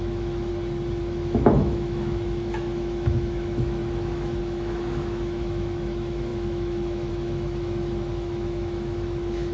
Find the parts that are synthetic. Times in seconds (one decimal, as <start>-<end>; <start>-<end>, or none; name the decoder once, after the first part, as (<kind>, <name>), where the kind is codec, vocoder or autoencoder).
0.0-0.5 (autoencoder, DAC-VAE); 1.0-9.5